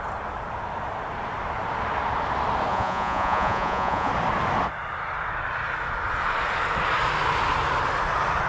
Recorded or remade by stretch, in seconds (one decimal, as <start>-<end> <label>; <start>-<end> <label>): 0.0-2.7 recorded; 2.7-4.1 remade; 4.1-8.5 recorded